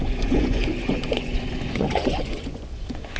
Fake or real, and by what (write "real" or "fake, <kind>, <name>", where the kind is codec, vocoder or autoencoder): fake, vocoder, Vocos